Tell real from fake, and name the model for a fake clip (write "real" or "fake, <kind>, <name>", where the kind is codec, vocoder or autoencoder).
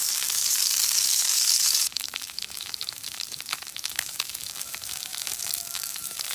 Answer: fake, codec, DAC